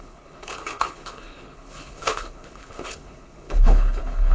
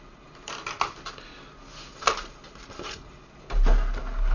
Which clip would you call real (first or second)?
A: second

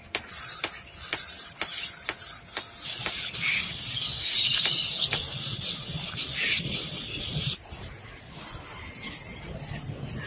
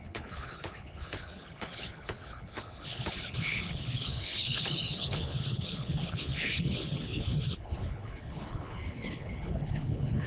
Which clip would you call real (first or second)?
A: first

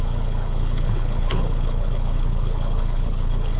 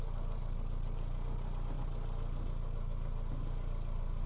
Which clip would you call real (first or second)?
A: second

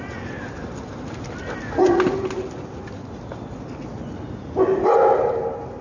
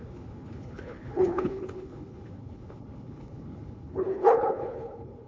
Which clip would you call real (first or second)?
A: first